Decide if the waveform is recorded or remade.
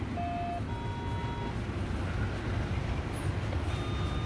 recorded